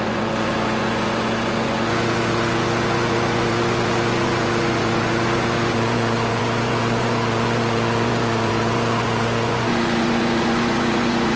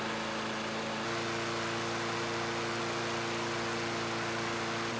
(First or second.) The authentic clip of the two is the second